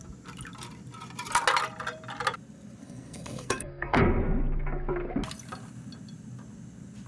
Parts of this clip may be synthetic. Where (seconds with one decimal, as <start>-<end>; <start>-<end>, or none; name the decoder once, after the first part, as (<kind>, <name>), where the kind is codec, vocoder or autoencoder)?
2.8-4.0 (codec, SNAC)